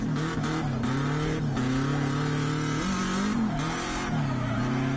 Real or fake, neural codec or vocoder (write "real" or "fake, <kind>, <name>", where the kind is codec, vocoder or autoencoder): real